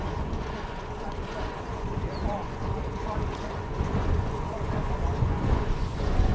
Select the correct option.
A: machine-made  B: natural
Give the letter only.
A